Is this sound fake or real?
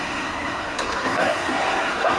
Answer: fake